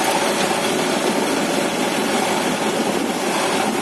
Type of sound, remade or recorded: recorded